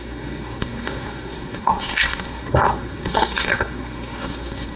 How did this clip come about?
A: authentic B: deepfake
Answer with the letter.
B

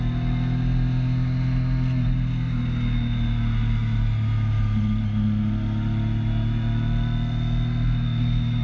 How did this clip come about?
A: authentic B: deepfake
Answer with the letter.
A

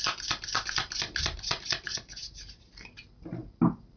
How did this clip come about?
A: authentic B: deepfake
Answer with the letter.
A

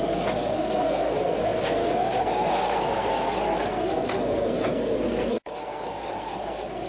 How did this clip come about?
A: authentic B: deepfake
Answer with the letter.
B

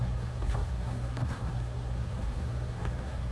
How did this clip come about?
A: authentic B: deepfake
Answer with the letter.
B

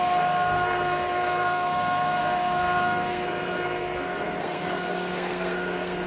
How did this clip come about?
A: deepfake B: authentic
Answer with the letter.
A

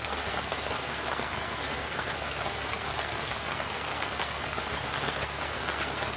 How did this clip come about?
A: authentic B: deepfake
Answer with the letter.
B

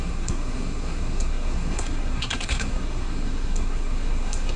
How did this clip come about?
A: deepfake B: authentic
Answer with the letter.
A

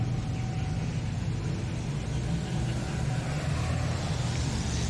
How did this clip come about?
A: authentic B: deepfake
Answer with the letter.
A